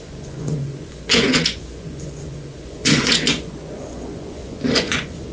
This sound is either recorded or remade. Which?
remade